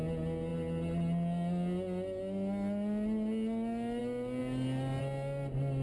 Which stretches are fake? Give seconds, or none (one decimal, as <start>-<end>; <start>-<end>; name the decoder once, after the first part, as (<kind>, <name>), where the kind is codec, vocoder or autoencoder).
none